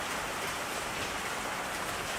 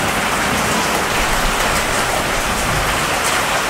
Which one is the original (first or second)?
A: second